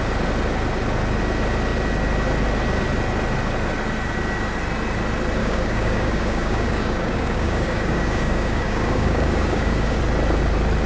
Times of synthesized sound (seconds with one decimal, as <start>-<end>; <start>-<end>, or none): 5.4-10.0